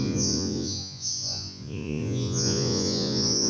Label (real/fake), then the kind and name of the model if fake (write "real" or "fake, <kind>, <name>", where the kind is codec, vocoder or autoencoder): fake, vocoder, Vocos